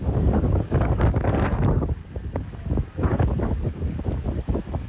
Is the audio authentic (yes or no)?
no